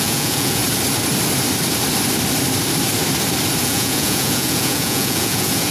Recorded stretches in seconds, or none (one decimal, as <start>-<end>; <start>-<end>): 0.6-3.6